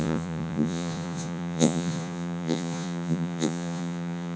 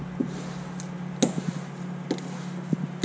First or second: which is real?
second